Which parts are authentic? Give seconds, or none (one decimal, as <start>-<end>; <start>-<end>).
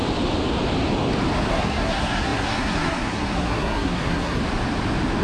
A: 0.0-1.5; 4.4-5.2